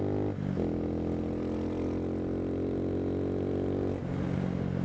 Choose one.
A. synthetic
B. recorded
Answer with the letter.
B